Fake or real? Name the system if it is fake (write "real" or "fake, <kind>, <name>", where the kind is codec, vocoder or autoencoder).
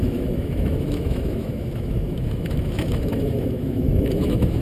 fake, autoencoder, DAC-VAE